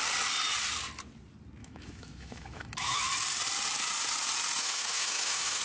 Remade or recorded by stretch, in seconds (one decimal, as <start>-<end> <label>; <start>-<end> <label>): 0.0-1.6 recorded; 1.6-3.0 remade; 3.0-4.6 recorded; 4.6-5.6 remade